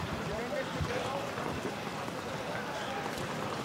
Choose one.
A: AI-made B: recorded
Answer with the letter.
B